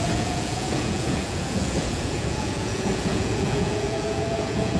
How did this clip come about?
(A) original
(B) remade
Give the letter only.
B